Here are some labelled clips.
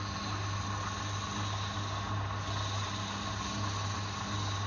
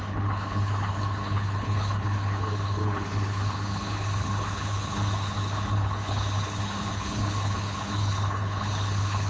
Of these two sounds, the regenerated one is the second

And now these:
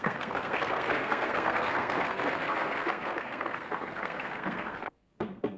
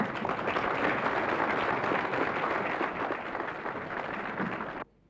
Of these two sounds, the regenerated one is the first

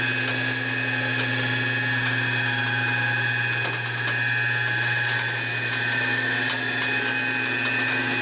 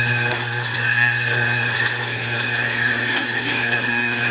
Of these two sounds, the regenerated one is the second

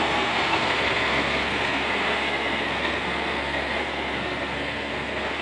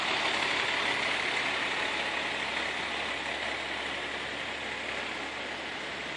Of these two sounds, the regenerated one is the first